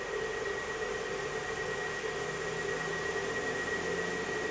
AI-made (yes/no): no